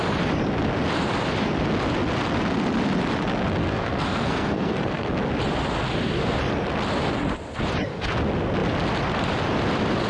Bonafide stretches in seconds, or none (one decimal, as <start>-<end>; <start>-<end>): 0.0-3.6; 5.1-10.1